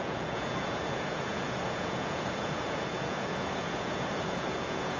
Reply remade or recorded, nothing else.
remade